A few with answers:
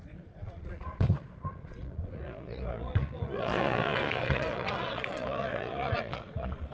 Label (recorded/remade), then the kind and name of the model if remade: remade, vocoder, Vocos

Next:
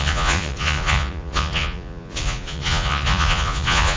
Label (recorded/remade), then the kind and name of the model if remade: remade, vocoder, Vocos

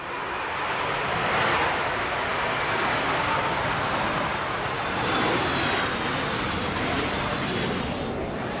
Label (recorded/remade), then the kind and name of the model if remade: recorded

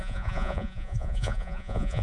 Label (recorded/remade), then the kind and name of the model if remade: remade, vocoder, Vocos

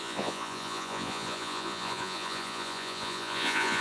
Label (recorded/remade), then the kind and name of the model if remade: remade, vocoder, Vocos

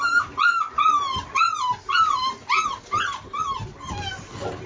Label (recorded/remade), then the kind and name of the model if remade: recorded